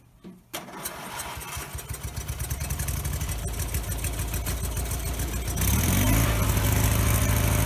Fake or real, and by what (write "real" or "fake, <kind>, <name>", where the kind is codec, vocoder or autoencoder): real